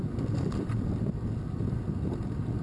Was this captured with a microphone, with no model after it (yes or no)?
yes